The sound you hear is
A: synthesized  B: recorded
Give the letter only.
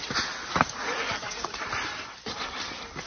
A